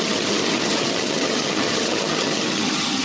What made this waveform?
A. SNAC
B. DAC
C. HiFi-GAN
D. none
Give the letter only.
C